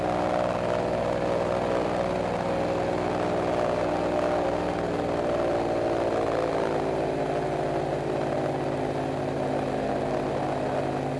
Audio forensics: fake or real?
real